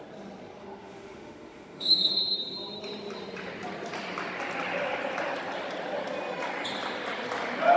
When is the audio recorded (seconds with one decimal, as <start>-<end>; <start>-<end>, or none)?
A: 0.0-0.6; 2.2-7.8